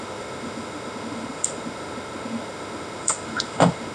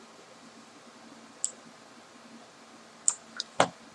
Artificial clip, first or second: first